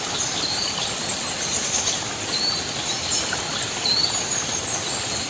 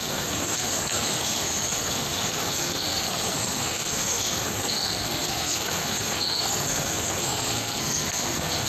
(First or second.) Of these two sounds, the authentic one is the first